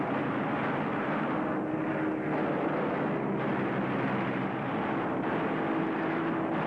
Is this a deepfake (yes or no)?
no